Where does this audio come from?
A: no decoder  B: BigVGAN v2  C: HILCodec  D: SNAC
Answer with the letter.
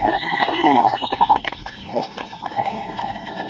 D